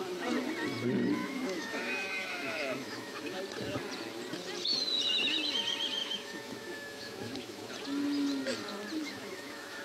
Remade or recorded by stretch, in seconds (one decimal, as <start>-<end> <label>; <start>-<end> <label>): 0.0-1.2 recorded; 1.2-3.4 remade; 3.4-6.0 recorded; 6.0-7.7 remade; 7.7-9.0 recorded; 9.0-9.8 remade